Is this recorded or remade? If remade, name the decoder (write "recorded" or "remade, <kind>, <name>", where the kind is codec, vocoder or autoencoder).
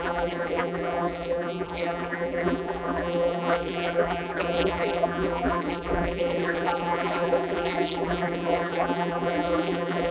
remade, vocoder, BigVGAN v2